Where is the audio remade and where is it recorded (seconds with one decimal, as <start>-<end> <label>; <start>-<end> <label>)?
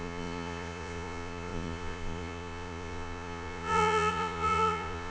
0.0-5.1 remade